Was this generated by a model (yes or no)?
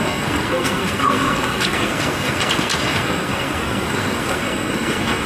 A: yes